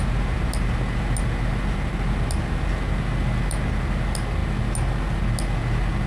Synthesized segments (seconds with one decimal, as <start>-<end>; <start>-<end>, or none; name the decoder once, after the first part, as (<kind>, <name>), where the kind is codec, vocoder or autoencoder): none